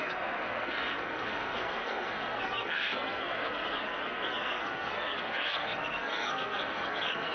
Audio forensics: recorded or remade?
remade